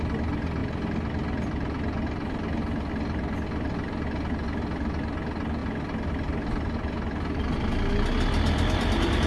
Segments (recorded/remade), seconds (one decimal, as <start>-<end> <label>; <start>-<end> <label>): 0.0-9.3 recorded